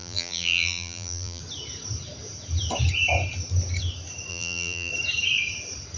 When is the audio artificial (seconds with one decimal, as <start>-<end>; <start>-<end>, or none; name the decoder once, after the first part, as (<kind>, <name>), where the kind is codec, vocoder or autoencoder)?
0.0-1.4 (vocoder, BigVGAN v2); 4.3-4.9